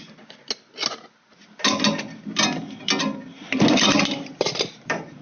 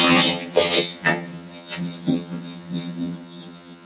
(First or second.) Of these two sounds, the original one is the first